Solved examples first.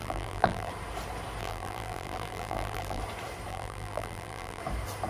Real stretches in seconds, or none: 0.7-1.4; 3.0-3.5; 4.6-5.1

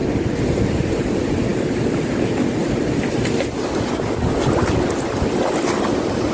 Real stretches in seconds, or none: 0.0-6.3